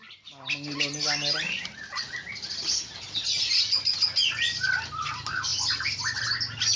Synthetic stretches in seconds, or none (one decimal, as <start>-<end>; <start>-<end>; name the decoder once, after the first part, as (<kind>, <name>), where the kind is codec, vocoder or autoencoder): none